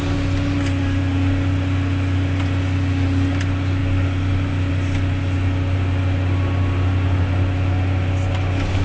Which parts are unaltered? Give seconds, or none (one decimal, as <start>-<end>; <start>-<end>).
0.0-8.8